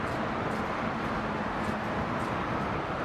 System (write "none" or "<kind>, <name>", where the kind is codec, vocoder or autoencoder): none